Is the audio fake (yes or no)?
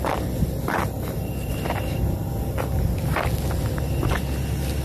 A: no